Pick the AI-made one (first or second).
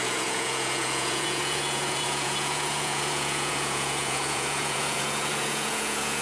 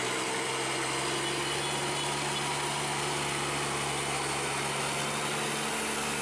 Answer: first